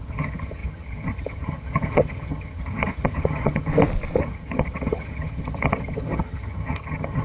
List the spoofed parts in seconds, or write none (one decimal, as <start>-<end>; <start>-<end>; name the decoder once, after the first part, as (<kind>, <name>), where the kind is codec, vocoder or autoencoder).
0.0-3.7 (vocoder, HiFi-GAN); 4.2-7.2

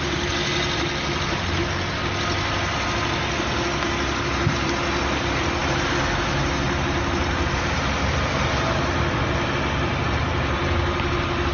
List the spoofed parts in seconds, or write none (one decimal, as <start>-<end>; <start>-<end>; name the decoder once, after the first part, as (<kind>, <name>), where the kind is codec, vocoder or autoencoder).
none

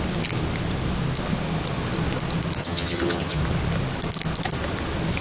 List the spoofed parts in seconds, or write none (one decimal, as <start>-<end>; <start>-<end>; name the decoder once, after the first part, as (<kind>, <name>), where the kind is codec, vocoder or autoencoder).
2.6-3.4 (vocoder, HiFi-GAN)

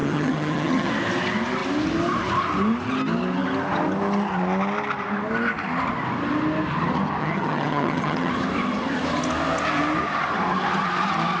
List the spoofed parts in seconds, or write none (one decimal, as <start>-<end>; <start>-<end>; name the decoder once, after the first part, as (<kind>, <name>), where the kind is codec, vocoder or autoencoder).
0.0-0.9 (vocoder, HiFi-GAN); 7.2-8.3

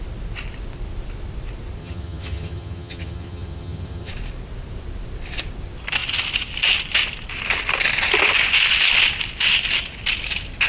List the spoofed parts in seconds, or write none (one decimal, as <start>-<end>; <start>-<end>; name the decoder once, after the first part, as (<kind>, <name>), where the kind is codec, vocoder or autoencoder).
1.8-4.1 (vocoder, HiFi-GAN)

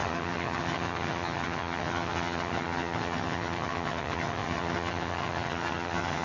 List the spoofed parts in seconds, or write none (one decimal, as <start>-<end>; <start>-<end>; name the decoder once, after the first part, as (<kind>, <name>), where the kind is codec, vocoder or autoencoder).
0.0-6.2 (vocoder, HiFi-GAN)

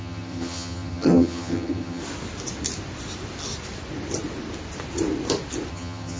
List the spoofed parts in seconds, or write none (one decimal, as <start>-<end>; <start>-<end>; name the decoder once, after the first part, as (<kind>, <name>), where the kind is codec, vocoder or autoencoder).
0.0-2.0 (vocoder, HiFi-GAN); 5.7-6.2